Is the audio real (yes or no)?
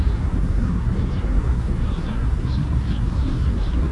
no